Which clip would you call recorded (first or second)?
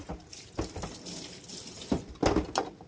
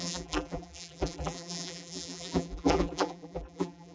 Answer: first